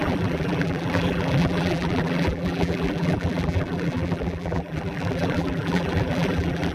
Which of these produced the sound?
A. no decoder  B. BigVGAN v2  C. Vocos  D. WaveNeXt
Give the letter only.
B